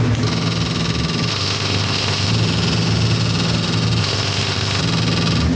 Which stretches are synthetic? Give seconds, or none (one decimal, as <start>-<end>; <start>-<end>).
1.3-2.3; 4.0-4.8

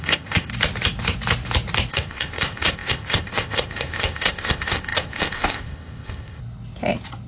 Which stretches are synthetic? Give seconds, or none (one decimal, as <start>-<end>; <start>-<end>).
0.0-0.5; 1.9-6.4

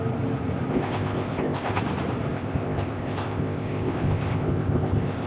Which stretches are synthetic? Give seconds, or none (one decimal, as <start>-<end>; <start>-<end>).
0.7-1.8; 2.3-5.3

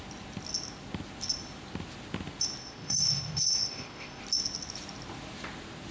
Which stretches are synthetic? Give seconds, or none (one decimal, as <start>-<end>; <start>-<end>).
2.6-4.2

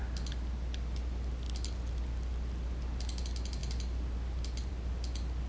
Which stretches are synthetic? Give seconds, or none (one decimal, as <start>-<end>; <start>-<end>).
none